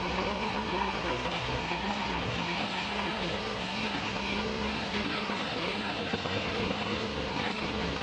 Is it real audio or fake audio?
fake